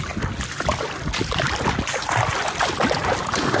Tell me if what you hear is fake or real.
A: real